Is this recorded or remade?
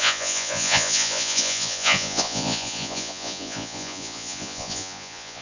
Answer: remade